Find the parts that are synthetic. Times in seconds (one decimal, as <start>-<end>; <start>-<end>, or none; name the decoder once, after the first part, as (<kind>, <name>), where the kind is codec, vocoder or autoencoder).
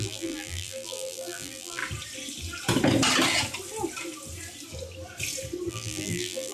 0.0-1.8 (vocoder, BigVGAN v2); 5.7-6.5